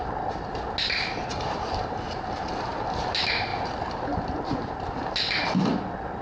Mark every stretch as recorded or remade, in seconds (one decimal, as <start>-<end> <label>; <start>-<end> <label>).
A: 0.0-1.3 recorded; 1.3-2.2 remade; 2.2-3.5 recorded; 3.5-4.4 remade; 4.4-6.2 recorded